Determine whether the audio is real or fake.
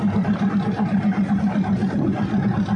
real